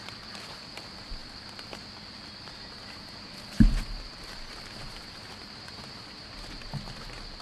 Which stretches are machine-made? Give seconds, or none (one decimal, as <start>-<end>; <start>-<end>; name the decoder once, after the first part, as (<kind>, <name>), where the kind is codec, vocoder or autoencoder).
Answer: none